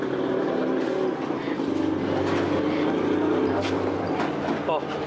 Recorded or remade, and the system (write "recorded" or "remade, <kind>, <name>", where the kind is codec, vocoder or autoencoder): recorded